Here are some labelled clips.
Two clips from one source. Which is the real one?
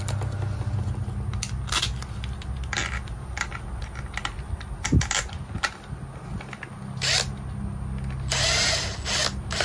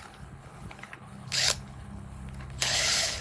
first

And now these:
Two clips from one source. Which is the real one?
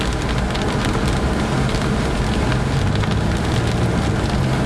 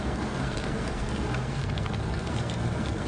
first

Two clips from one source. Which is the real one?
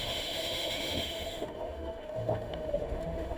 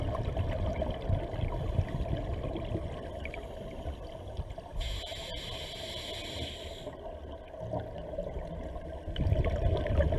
second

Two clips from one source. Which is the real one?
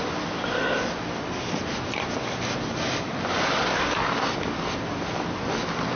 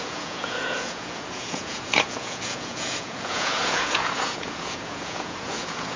first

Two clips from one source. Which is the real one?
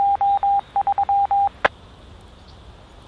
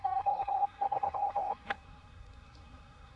first